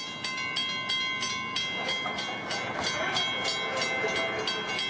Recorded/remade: recorded